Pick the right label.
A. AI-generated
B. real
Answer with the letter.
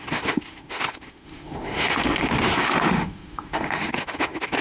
A